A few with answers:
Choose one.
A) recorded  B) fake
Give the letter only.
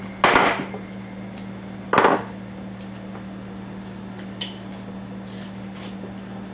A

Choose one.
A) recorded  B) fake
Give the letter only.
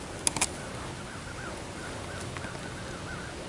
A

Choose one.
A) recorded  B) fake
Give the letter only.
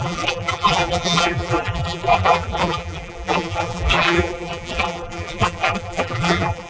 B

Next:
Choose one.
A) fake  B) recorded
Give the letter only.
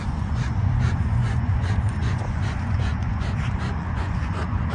A